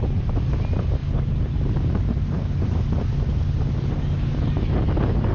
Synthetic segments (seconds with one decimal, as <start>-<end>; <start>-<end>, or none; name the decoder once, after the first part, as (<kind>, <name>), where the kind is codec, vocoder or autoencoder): none